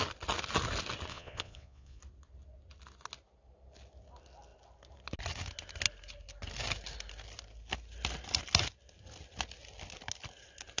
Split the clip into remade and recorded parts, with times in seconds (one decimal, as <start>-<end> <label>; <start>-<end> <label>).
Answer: 0.0-1.1 recorded; 1.1-2.0 remade; 2.0-10.8 recorded